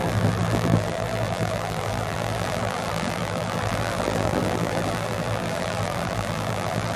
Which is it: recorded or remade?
remade